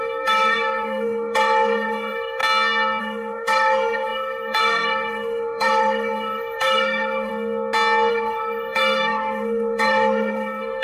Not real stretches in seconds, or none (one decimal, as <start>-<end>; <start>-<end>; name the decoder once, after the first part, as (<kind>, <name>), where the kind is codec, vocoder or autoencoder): 0.0-2.4 (codec, SNAC); 3.0-7.3; 8.1-10.8